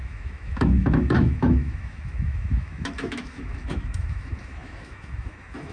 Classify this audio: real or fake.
fake